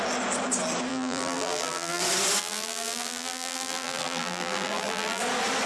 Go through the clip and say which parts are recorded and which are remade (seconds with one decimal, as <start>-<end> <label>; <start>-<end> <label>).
0.0-0.9 recorded; 0.9-2.0 remade; 2.0-2.4 recorded; 2.4-5.2 remade; 5.2-5.7 recorded